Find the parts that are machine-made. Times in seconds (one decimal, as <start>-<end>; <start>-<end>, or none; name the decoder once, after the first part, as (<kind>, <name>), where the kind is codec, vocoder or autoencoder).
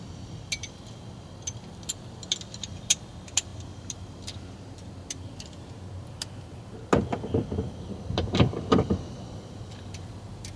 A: none